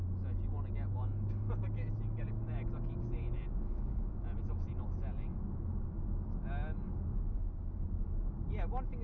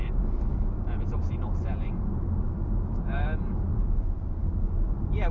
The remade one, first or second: second